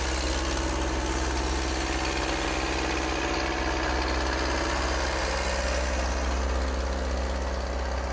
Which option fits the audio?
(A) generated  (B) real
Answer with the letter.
B